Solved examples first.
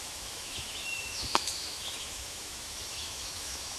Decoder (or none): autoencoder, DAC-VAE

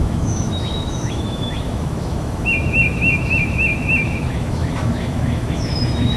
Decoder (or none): autoencoder, DAC-VAE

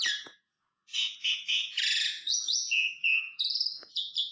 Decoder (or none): vocoder, Vocos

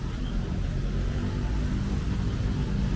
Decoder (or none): none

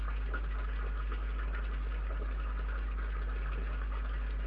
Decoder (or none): none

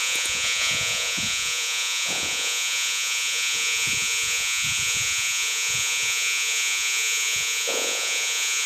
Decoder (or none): vocoder, Vocos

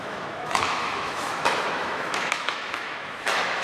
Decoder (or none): autoencoder, DAC-VAE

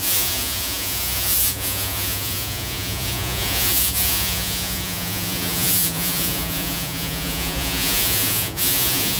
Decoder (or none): vocoder, Vocos